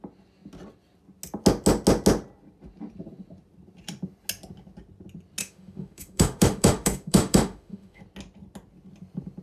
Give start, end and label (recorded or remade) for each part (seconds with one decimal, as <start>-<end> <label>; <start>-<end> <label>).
0.0-5.4 recorded; 5.4-8.0 remade; 8.0-9.4 recorded